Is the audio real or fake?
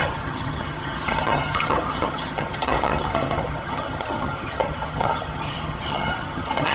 fake